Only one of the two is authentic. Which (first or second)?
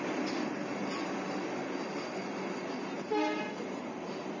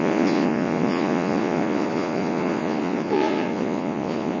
first